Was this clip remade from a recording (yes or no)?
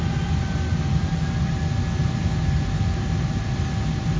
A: no